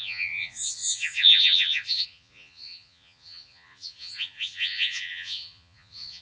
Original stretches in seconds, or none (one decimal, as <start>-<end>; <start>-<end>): none